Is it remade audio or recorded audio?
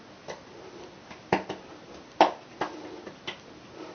recorded